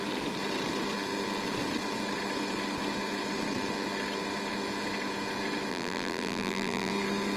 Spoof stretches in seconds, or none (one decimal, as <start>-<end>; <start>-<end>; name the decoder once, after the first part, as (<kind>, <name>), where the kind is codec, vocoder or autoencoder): 5.7-6.9 (vocoder, BigVGAN v2)